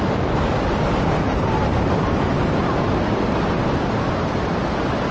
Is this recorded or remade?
recorded